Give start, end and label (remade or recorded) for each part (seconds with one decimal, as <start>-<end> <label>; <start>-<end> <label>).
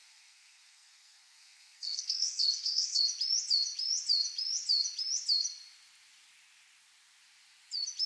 0.0-3.0 remade; 3.0-8.1 recorded